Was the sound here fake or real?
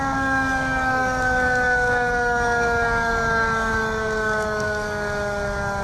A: fake